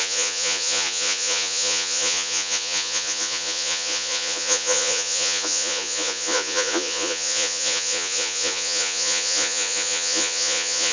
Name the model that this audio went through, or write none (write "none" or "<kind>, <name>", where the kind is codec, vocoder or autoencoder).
vocoder, Vocos